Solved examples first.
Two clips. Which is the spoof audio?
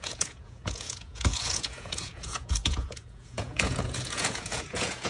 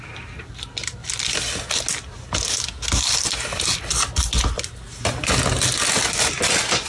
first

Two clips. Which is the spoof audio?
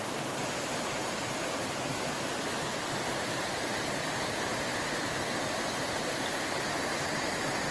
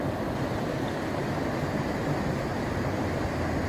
first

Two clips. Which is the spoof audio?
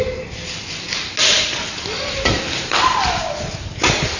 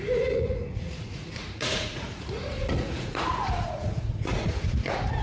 second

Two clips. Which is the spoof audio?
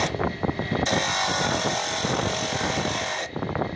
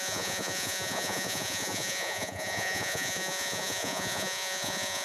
second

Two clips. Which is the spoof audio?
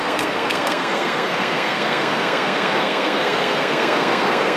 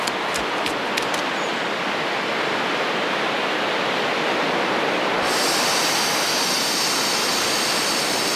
first